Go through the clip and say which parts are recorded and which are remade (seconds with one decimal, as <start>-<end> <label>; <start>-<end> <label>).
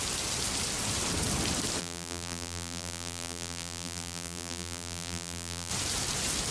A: 0.0-1.8 recorded; 1.8-5.7 remade; 5.7-6.5 recorded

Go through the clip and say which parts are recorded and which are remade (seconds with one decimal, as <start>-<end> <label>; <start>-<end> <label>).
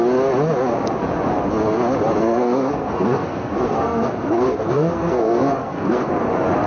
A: 0.0-2.2 recorded; 2.2-6.1 remade; 6.1-6.7 recorded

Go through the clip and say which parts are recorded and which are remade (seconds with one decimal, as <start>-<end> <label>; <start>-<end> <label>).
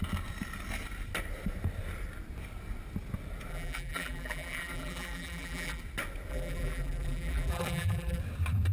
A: 0.0-3.5 recorded; 3.5-5.8 remade; 5.8-6.3 recorded; 6.3-8.2 remade; 8.2-8.7 recorded